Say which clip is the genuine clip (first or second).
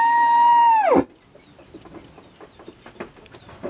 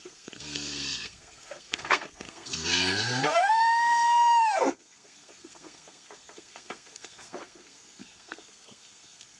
first